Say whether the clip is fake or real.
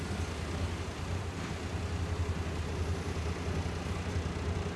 real